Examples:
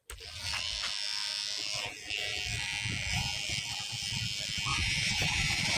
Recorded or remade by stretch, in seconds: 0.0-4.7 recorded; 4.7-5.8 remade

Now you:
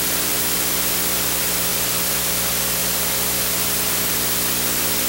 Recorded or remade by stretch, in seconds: 0.0-5.1 recorded